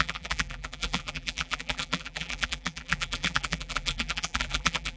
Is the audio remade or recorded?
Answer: remade